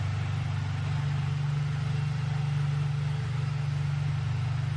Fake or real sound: real